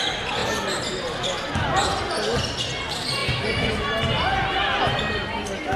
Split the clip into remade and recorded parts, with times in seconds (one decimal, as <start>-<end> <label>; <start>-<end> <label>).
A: 0.0-5.8 recorded